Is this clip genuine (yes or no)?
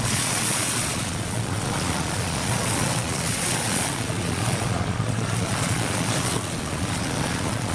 no